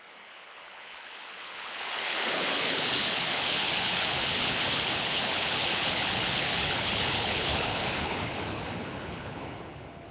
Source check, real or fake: fake